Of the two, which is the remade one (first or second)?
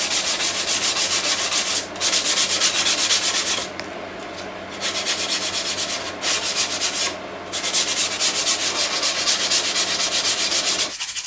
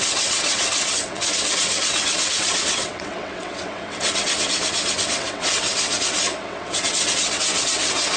second